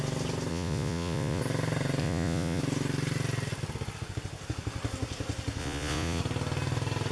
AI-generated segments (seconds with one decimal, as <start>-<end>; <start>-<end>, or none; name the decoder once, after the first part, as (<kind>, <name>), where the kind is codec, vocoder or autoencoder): 0.5-1.4 (vocoder, Vocos); 2.0-2.6; 5.6-6.2